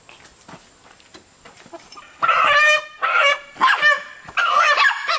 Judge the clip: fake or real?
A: real